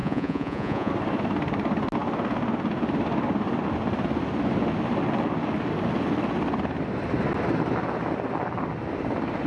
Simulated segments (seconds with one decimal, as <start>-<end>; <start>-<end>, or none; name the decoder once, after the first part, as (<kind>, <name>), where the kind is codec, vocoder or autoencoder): 0.0-0.9 (vocoder, Vocos)